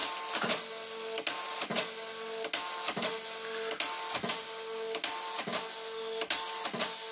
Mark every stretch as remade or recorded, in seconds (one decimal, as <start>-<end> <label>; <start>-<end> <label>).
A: 0.0-7.1 recorded